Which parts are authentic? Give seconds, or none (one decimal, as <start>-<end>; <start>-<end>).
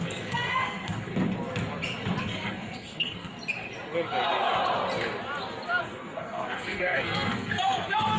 1.1-2.2; 3.3-5.8